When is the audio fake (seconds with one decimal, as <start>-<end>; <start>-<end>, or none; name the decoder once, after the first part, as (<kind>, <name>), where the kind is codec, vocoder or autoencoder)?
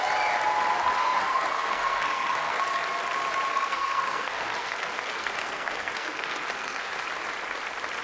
1.0-2.6 (codec, SNAC); 3.5-6.9